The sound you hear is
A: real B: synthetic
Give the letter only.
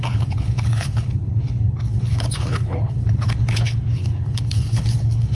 B